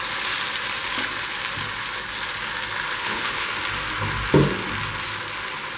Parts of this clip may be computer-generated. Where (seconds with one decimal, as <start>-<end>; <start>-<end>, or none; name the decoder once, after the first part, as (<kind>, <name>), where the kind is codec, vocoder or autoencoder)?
2.9-3.5 (codec, HILCodec)